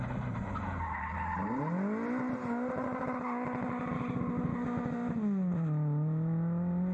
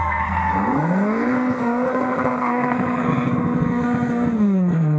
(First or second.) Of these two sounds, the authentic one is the first